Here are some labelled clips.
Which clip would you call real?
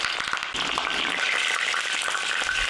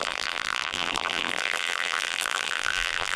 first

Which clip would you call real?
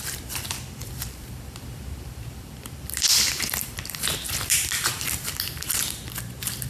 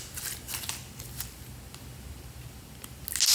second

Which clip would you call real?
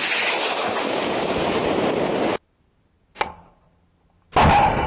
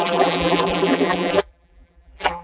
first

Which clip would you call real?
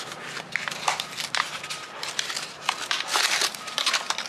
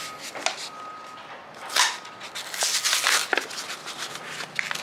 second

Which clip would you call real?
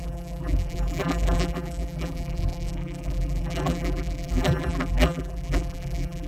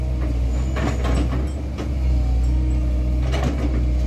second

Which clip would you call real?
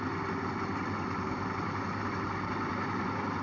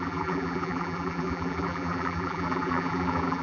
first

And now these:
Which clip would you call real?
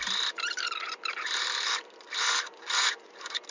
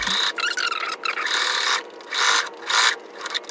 second